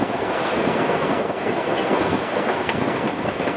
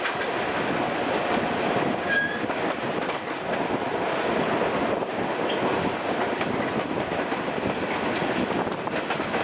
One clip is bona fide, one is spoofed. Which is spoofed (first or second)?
first